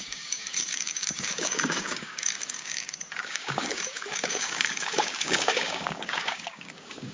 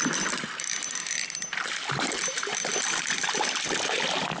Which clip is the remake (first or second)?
first